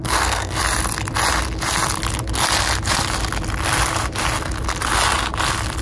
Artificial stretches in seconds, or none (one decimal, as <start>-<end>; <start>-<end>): 0.0-0.6